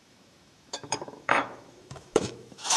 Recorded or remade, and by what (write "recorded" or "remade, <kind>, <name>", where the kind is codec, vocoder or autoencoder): remade, autoencoder, DAC-VAE